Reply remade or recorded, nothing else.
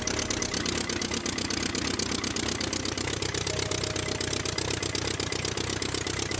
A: recorded